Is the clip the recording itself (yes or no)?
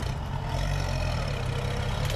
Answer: yes